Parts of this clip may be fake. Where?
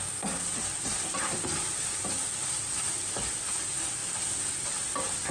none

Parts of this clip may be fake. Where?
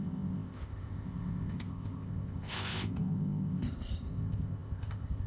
0.0-5.3 (codec, ZipCodec)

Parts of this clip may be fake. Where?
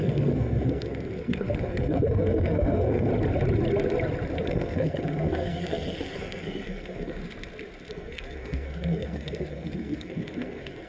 0.0-3.1 (codec, SNAC); 4.5-7.2; 7.9-10.9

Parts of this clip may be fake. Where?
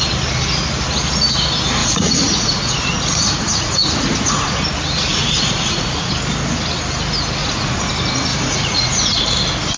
1.8-4.5 (vocoder, Vocos); 5.1-6.1; 7.4-7.9; 8.3-9.2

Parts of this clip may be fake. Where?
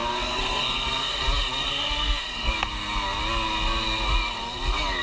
0.0-1.2 (codec, SNAC); 1.6-2.5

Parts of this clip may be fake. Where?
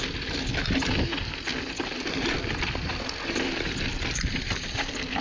none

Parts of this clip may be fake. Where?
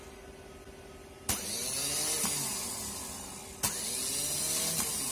none